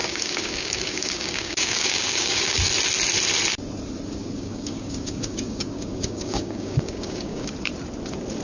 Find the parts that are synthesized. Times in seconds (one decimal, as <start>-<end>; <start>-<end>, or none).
0.0-2.6; 4.2-7.5